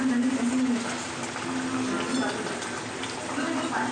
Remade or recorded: recorded